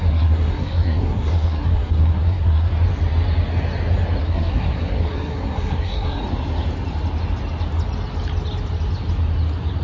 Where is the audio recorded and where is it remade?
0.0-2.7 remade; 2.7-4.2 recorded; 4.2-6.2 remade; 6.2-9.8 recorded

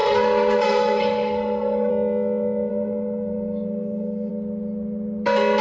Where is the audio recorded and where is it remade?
0.0-1.9 remade; 1.9-2.7 recorded; 2.7-4.3 remade; 4.3-5.6 recorded

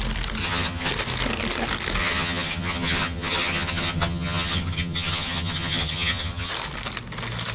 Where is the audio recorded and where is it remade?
0.0-0.4 recorded; 0.4-0.9 remade; 0.9-2.0 recorded; 2.0-6.5 remade; 6.5-7.5 recorded

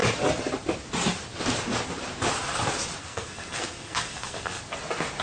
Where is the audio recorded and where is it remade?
0.0-3.0 recorded; 3.0-4.6 remade; 4.6-5.2 recorded

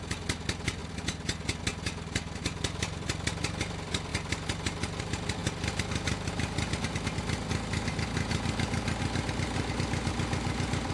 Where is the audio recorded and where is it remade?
0.0-10.9 recorded

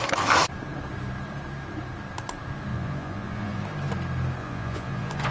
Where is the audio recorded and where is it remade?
0.0-2.7 recorded; 2.7-3.6 remade; 3.6-4.4 recorded; 4.4-5.3 remade